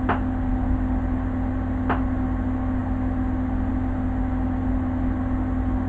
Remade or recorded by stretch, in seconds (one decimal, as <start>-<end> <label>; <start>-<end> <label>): 0.0-5.9 recorded